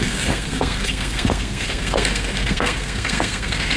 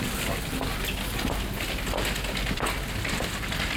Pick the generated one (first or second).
first